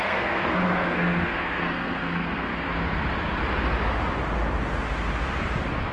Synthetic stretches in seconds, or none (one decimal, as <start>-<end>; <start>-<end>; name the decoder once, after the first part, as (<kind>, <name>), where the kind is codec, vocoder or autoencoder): 0.0-2.5 (codec, SNAC)